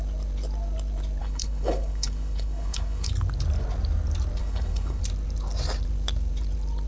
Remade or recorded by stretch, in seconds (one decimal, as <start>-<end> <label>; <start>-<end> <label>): 0.0-1.2 recorded; 1.2-3.1 remade; 3.1-4.4 recorded; 4.4-5.0 remade; 5.0-6.9 recorded